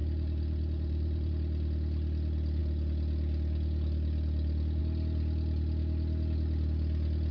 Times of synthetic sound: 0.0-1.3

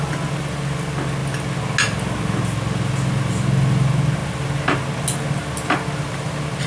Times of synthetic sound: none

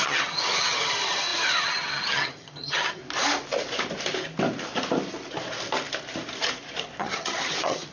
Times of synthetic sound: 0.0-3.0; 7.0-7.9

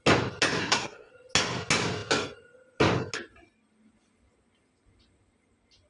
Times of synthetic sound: 0.6-1.1